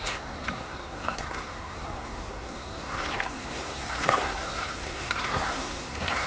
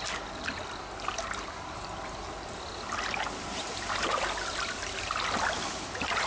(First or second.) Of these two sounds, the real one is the second